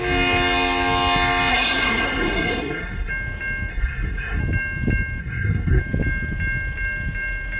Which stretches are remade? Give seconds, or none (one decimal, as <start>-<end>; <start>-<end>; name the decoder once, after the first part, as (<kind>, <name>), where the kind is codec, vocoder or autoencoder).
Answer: 1.5-3.1 (codec, SNAC); 3.7-4.4; 5.2-5.8